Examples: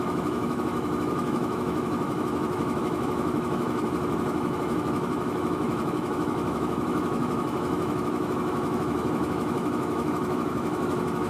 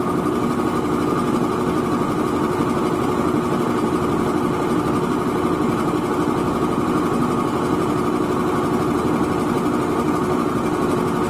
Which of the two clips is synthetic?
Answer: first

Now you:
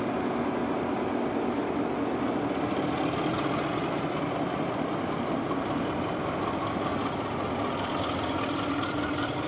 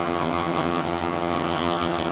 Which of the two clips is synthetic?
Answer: second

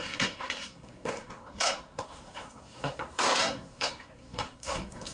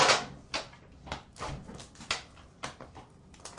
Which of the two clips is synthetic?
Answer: first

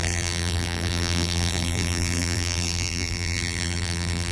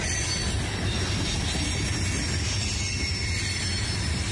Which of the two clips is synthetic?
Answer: first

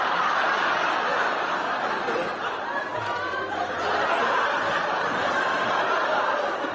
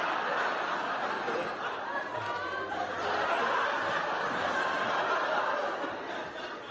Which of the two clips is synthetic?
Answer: first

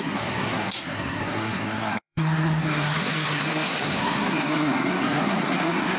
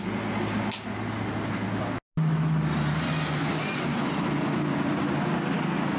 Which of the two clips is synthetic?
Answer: first